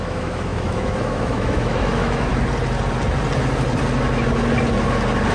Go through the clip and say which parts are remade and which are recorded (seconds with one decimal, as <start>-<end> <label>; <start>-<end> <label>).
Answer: 0.0-2.3 remade; 2.3-5.3 recorded